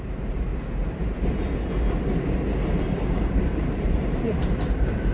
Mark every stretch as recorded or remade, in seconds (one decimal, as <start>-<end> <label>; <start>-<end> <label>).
0.0-0.5 remade; 0.5-2.9 recorded; 2.9-5.1 remade